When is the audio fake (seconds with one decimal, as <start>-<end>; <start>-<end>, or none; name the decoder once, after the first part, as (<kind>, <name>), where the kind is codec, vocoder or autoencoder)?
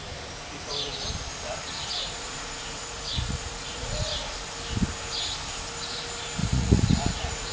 2.0-4.1 (vocoder, Vocos); 6.4-7.5